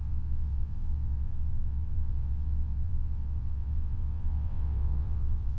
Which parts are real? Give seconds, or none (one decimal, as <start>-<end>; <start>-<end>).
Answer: none